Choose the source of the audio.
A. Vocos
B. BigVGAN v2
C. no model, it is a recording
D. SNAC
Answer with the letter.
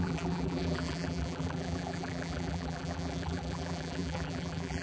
B